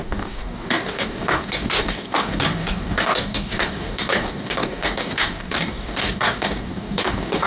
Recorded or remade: remade